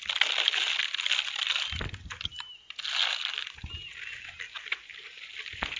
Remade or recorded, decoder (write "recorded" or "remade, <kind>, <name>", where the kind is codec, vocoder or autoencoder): recorded